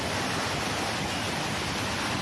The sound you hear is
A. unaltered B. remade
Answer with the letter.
A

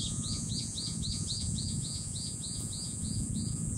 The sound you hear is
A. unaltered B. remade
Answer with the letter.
B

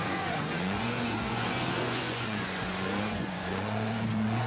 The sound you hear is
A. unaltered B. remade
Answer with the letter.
B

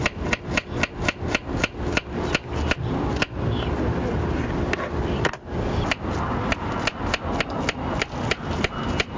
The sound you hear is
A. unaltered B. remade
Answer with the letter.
A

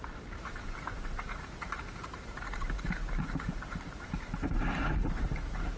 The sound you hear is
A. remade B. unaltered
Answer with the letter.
A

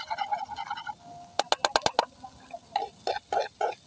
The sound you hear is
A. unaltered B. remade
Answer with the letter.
A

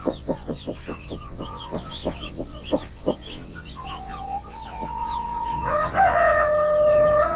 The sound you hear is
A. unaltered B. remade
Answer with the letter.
B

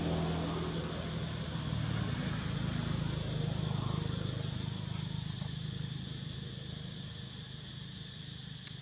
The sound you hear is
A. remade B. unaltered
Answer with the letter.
B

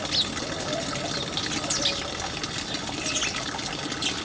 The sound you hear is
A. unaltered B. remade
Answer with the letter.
A